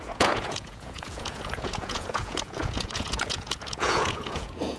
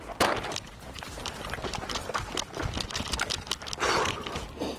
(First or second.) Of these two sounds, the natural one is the second